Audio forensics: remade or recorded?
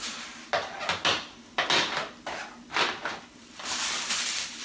recorded